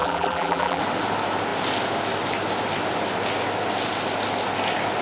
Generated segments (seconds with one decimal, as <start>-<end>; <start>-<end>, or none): 0.0-0.8